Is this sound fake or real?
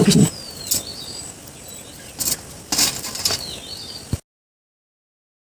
real